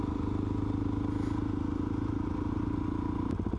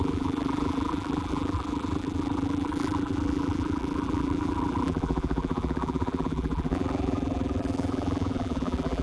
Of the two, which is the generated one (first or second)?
second